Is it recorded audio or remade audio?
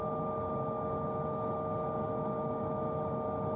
recorded